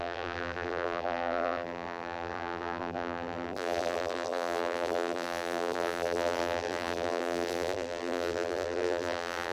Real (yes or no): no